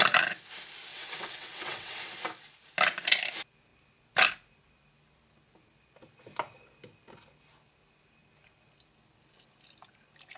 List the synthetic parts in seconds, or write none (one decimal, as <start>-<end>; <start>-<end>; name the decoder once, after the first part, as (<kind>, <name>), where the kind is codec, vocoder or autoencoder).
0.9-2.1 (vocoder, WaveNeXt)